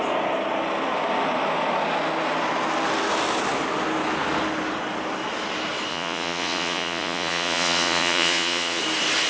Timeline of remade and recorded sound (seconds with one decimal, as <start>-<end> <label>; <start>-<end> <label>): 0.0-5.9 recorded; 5.9-8.8 remade; 8.8-9.3 recorded